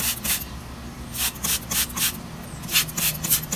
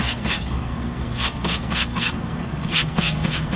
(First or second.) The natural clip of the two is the first